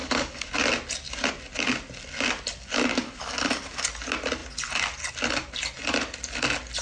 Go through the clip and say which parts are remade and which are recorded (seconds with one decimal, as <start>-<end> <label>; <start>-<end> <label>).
0.0-0.5 remade; 0.5-2.9 recorded; 2.9-3.9 remade; 3.9-6.8 recorded